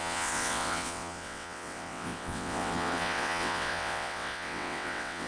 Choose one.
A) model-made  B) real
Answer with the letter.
A